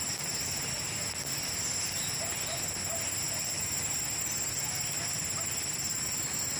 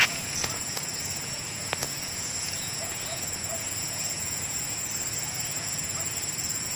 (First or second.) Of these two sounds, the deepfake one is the second